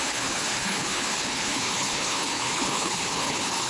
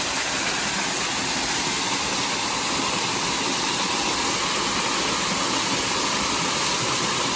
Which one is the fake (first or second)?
first